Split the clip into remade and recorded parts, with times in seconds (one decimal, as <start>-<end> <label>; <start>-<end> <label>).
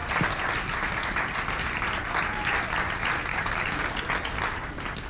0.0-3.3 recorded; 3.3-4.0 remade; 4.0-5.1 recorded